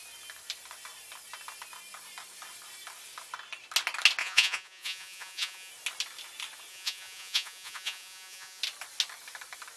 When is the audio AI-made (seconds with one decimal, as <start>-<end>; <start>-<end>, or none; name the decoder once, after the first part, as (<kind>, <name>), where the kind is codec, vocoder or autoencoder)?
4.2-5.7 (vocoder, Vocos); 6.7-8.6